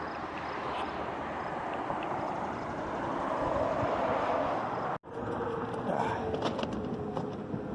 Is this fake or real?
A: real